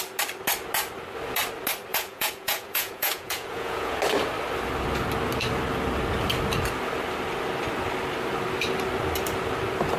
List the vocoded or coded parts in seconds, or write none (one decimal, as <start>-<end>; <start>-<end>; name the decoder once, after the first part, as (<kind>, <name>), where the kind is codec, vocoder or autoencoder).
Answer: 1.9-4.0 (vocoder, Vocos)